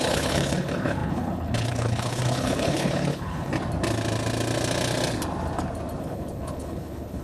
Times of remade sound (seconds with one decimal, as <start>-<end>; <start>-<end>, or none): 0.0-3.5; 6.0-7.2